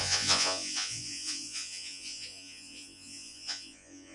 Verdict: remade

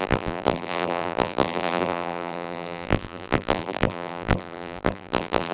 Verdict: remade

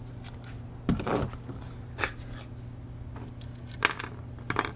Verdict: recorded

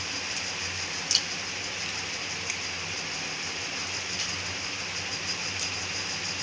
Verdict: recorded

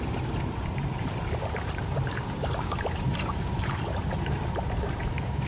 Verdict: remade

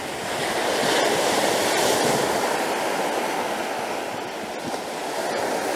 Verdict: recorded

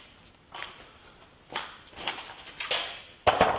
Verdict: recorded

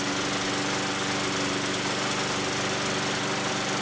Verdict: recorded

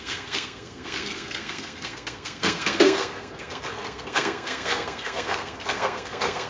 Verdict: remade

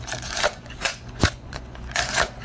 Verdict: remade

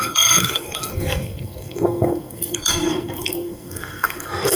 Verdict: remade